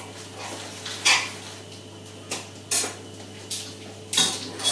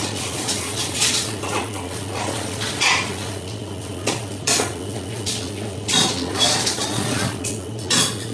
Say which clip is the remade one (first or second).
second